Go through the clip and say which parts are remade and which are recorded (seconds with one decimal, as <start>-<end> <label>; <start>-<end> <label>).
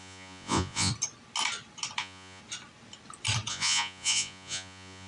0.0-0.9 remade; 0.9-2.0 recorded; 2.0-2.4 remade; 2.4-3.5 recorded; 3.5-5.1 remade